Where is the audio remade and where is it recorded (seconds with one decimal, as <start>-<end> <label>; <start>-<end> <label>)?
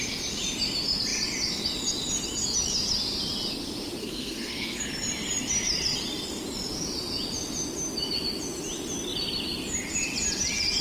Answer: 0.0-4.0 recorded; 4.0-4.8 remade; 4.8-10.8 recorded